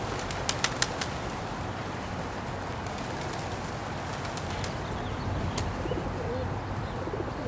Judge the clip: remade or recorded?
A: recorded